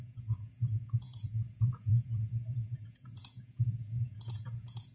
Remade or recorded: remade